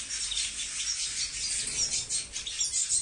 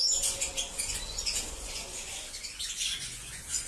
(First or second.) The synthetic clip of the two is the second